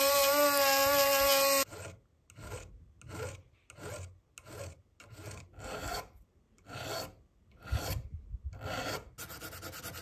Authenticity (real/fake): real